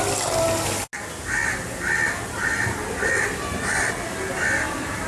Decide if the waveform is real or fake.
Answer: real